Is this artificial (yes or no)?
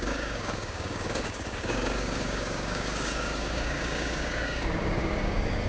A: yes